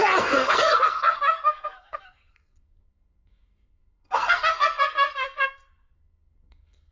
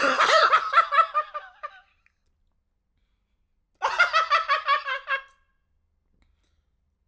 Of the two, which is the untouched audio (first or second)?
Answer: second